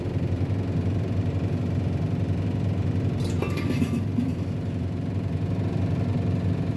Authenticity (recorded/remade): recorded